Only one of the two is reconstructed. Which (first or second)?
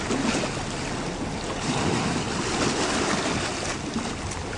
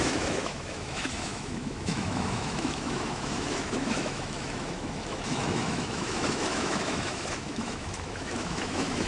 second